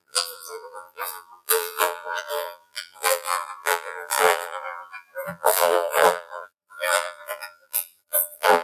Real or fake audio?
fake